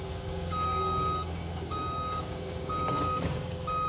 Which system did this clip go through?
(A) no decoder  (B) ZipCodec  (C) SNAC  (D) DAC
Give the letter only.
D